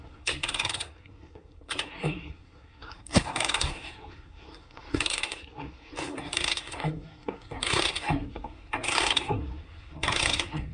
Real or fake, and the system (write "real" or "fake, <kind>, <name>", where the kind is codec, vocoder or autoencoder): fake, codec, SNAC